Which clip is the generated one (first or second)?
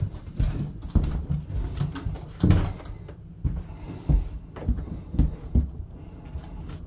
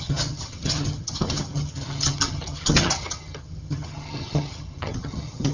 second